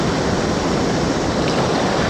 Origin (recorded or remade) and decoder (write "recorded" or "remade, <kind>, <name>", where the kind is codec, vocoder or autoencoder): recorded